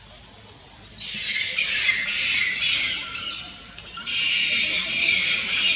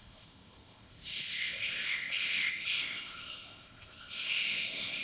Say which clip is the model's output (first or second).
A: second